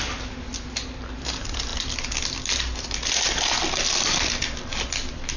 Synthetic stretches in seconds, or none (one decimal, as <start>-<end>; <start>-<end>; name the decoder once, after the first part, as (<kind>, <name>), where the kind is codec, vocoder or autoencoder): none